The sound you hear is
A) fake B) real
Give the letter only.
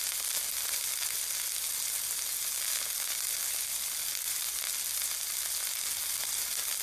B